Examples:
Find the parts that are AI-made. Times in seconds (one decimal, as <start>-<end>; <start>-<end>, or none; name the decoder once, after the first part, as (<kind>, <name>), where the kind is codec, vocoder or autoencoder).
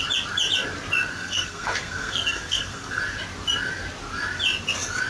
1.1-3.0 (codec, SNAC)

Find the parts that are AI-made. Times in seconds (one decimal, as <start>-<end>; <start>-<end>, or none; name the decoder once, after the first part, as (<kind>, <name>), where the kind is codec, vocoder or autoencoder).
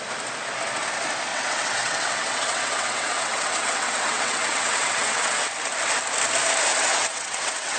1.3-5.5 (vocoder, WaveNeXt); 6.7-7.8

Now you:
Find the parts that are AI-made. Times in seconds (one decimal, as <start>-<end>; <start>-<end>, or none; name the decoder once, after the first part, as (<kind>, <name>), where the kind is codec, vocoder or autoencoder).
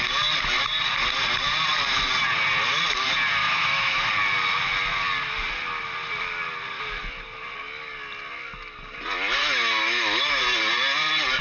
3.4-4.1 (autoencoder, DAC-VAE); 9.4-10.4